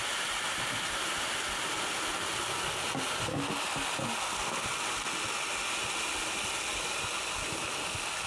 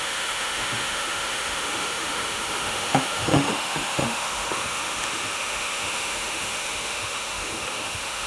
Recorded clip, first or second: first